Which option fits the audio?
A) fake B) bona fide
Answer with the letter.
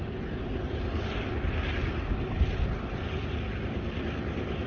B